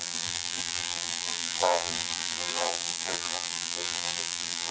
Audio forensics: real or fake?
fake